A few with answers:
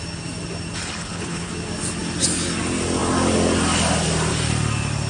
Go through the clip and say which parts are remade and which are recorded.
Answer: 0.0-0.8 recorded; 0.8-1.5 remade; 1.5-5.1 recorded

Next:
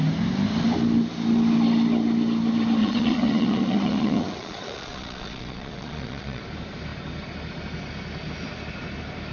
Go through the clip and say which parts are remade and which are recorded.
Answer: 0.0-2.8 recorded; 2.8-6.4 remade; 6.4-9.3 recorded

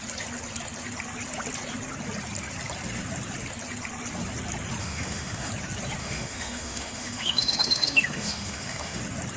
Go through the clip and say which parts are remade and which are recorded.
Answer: 0.0-4.8 recorded; 4.8-5.5 remade; 5.5-6.0 recorded; 6.0-9.0 remade; 9.0-9.4 recorded

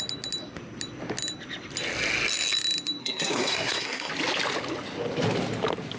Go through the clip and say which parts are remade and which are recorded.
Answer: 0.0-3.0 recorded; 3.0-4.1 remade; 4.1-6.0 recorded

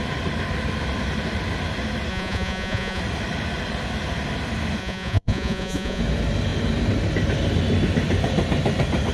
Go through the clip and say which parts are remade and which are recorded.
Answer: 0.0-2.1 recorded; 2.1-3.0 remade; 3.0-4.8 recorded; 4.8-6.0 remade; 6.0-9.1 recorded

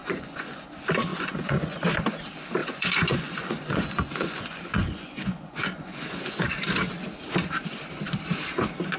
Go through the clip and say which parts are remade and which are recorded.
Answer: 0.0-0.6 remade; 0.6-1.1 recorded; 1.1-1.8 remade; 1.8-2.6 recorded; 2.6-6.5 remade; 6.5-9.0 recorded

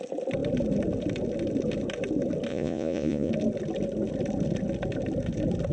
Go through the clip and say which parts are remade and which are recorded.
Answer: 0.0-2.5 recorded; 2.5-3.3 remade; 3.3-5.7 recorded